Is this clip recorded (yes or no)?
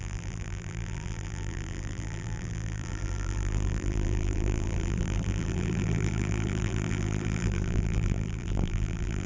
no